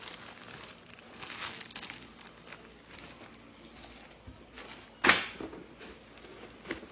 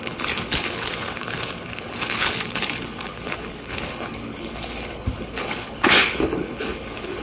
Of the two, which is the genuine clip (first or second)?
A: first